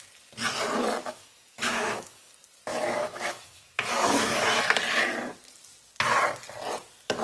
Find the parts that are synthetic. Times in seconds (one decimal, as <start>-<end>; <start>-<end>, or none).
1.0-2.3; 2.7-4.6